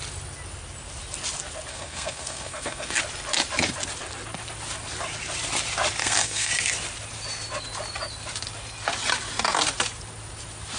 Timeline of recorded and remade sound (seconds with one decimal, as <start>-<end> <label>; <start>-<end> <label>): 0.0-1.7 recorded; 1.7-3.0 remade; 3.0-6.0 recorded; 6.0-6.5 remade; 6.5-10.8 recorded